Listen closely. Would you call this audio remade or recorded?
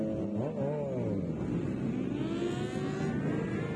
recorded